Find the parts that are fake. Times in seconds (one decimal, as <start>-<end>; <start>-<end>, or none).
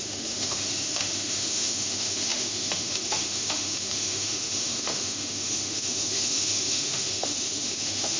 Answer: 0.0-8.2